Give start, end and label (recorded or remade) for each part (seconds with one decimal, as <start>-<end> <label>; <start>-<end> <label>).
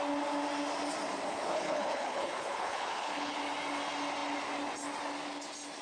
0.0-1.3 recorded; 1.3-3.4 remade; 3.4-5.8 recorded